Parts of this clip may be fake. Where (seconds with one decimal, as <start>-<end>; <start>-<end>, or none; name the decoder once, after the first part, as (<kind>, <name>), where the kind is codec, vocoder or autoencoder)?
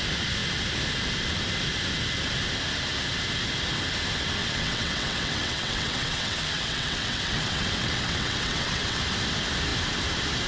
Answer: 4.4-9.0 (vocoder, WaveNeXt)